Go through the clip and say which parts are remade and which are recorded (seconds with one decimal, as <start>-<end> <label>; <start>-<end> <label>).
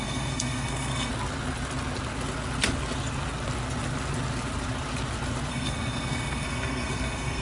0.0-1.1 remade; 1.1-5.5 recorded; 5.5-7.4 remade